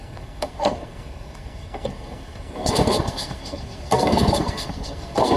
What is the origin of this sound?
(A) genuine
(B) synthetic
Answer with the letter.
B